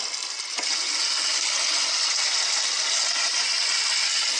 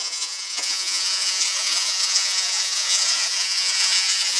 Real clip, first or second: first